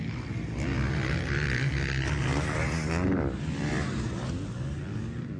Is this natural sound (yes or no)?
yes